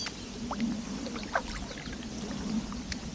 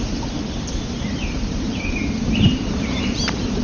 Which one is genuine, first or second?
first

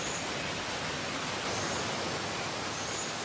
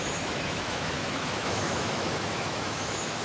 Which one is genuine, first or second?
first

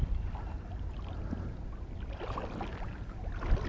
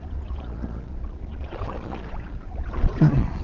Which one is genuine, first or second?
first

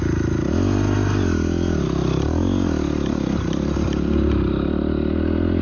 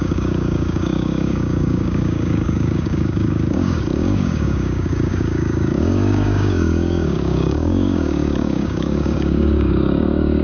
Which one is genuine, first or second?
first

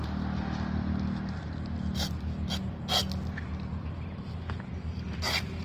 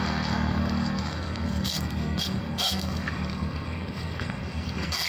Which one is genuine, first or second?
first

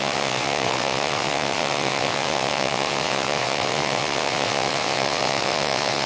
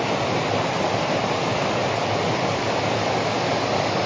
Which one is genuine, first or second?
second